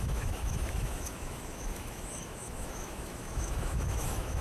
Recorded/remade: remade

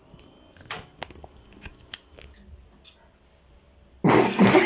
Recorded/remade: recorded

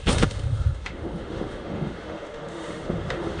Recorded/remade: remade